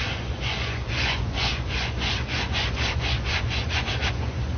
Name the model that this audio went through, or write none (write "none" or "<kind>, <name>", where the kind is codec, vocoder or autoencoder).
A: vocoder, Vocos